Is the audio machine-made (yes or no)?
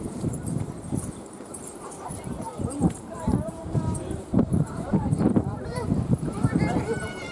yes